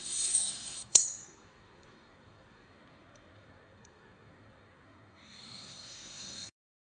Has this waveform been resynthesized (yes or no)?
yes